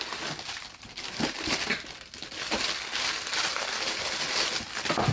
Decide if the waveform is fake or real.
real